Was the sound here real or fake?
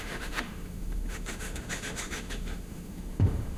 fake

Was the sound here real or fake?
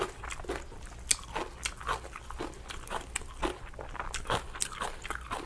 real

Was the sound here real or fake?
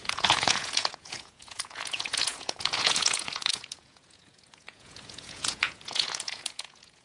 fake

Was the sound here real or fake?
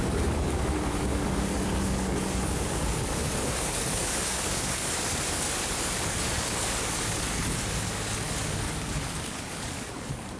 fake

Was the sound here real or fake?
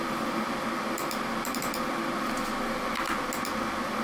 real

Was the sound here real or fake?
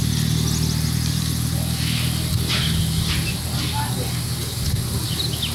real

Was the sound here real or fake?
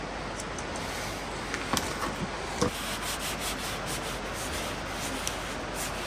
real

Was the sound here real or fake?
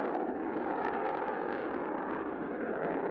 fake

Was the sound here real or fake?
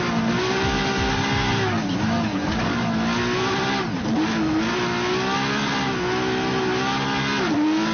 real